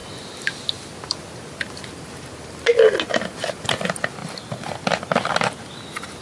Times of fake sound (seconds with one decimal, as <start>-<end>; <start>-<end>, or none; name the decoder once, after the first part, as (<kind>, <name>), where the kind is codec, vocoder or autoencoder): none